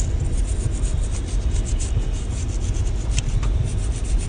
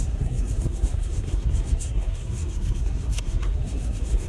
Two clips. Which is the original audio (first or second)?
first